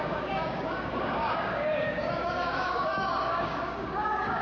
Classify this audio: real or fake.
fake